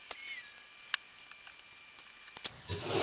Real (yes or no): yes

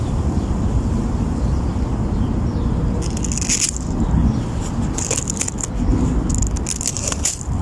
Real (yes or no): yes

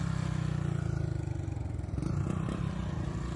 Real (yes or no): yes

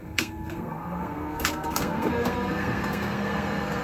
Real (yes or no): no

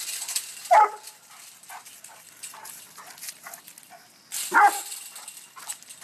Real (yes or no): yes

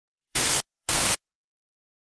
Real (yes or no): no